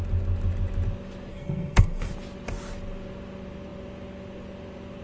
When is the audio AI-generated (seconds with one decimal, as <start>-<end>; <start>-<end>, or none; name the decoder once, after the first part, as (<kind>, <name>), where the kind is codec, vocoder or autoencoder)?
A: 1.3-2.1 (codec, SNAC)